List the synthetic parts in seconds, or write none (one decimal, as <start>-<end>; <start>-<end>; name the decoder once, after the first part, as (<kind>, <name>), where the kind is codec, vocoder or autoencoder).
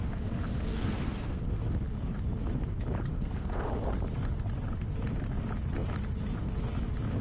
0.8-1.6 (codec, SNAC); 3.1-3.7